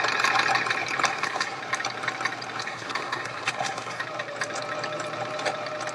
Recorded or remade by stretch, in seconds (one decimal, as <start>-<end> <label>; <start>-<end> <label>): 0.0-1.1 recorded; 1.1-1.6 remade; 1.6-2.6 recorded; 2.6-4.0 remade; 4.0-5.9 recorded